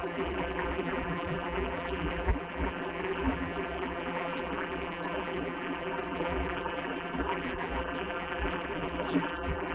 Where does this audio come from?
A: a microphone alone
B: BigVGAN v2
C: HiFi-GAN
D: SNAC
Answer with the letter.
B